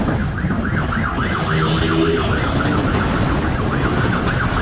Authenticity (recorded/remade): recorded